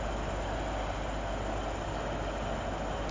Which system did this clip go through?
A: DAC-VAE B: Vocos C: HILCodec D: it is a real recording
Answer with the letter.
D